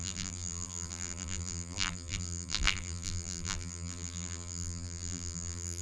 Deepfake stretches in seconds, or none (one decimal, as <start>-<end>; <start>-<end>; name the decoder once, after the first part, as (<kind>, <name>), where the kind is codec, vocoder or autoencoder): 0.0-5.8 (vocoder, BigVGAN v2)